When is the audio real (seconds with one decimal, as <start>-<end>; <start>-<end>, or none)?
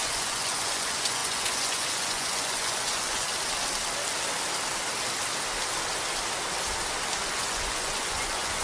3.3-7.2